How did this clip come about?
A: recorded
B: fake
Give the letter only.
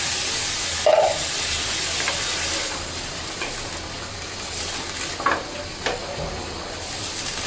A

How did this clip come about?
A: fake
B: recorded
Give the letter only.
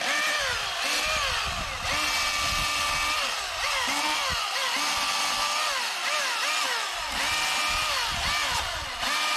B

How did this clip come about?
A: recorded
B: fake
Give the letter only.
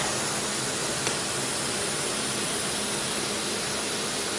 A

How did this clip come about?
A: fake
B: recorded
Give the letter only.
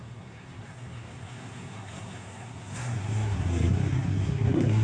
A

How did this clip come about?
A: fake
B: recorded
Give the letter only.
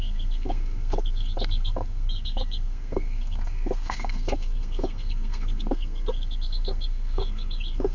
A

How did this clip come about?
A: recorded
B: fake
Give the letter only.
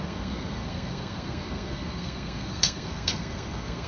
B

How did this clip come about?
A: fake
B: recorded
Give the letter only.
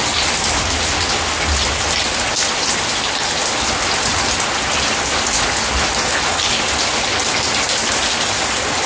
B